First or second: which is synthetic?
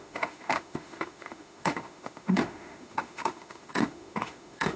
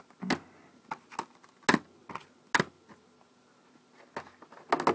first